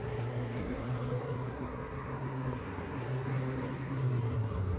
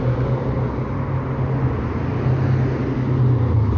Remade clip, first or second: first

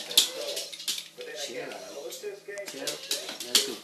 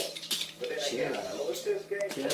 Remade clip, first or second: second